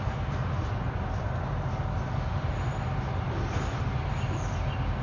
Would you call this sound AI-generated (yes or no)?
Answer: no